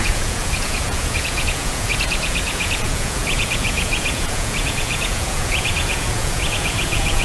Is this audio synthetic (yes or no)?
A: yes